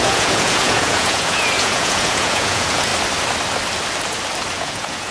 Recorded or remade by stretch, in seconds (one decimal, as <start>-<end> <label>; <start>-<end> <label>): 0.0-2.9 remade; 2.9-4.5 recorded; 4.5-5.1 remade